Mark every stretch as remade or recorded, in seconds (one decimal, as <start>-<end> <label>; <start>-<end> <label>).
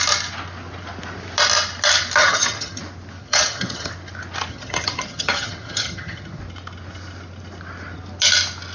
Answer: 0.0-2.2 recorded; 2.2-2.8 remade; 2.8-3.2 recorded; 3.2-3.9 remade; 3.9-4.5 recorded; 4.5-6.4 remade; 6.4-8.7 recorded